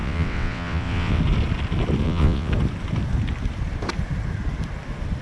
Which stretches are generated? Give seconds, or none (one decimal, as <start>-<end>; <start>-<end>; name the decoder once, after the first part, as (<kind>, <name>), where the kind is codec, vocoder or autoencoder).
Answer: 0.0-1.2 (vocoder, WaveNeXt); 2.0-2.5